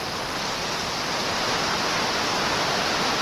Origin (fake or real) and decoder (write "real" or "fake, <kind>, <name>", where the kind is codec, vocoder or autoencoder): real